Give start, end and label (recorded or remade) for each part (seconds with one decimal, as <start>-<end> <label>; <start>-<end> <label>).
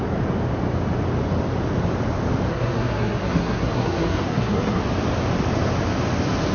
0.0-2.5 recorded; 2.5-4.8 remade; 4.8-6.5 recorded